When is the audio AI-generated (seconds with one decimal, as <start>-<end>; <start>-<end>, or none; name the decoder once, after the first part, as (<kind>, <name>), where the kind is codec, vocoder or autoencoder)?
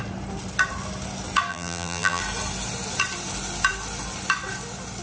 1.5-2.2 (vocoder, BigVGAN v2)